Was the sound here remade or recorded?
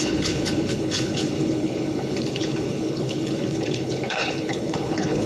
remade